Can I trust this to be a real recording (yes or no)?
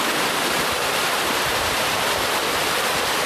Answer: yes